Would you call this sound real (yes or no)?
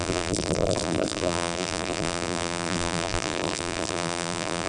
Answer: no